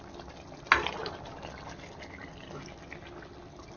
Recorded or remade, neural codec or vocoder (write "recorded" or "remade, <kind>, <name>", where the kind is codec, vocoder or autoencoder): recorded